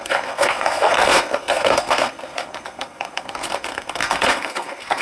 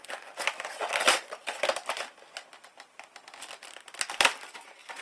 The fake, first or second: first